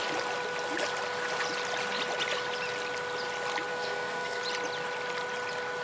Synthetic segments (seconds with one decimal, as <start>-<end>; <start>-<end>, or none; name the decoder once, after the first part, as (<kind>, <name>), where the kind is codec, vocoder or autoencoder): 3.7-4.4 (codec, SNAC)